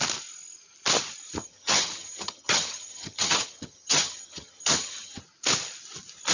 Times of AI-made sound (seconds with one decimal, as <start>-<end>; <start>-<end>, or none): 1.4-5.2